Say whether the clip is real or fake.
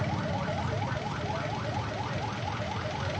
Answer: real